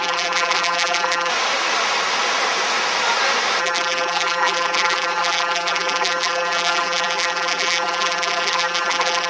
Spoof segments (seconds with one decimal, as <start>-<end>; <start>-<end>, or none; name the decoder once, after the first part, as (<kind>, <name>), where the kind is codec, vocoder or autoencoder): 0.0-1.3 (vocoder, BigVGAN v2); 3.6-9.3